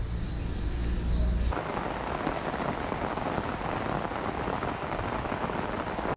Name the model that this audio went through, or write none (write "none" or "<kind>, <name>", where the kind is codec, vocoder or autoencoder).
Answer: none